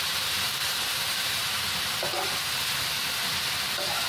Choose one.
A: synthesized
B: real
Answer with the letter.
B